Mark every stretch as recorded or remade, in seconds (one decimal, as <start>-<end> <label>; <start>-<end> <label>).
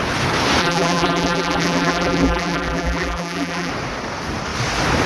0.0-0.6 recorded; 0.6-3.7 remade; 3.7-5.1 recorded